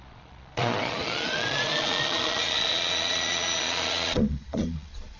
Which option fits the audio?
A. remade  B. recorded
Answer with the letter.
A